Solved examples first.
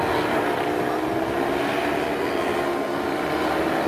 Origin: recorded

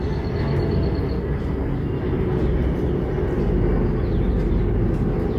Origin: recorded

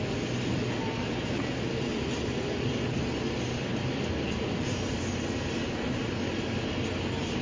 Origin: recorded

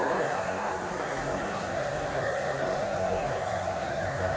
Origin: remade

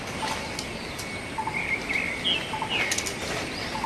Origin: recorded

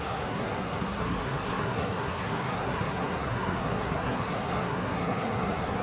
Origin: remade